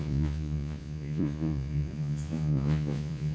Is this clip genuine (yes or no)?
no